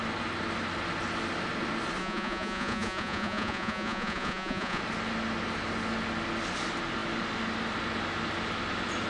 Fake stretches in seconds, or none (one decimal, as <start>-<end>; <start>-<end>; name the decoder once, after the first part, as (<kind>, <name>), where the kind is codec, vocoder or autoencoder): 2.0-4.8 (vocoder, Vocos)